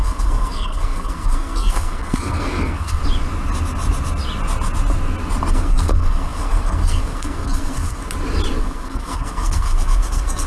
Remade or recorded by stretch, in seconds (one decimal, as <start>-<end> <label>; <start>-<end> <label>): 0.0-3.0 remade; 3.0-5.5 recorded; 5.5-8.0 remade; 8.0-8.6 recorded; 8.6-10.5 remade